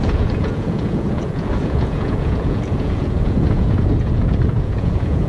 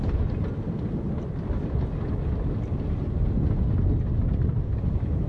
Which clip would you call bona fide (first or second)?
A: second